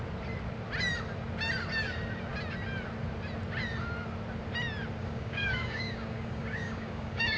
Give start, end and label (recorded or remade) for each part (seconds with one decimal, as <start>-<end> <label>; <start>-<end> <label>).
0.0-5.0 recorded; 5.0-7.4 remade